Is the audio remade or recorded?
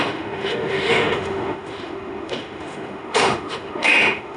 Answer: remade